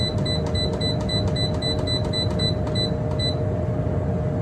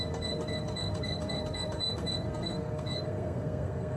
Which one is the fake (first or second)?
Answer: second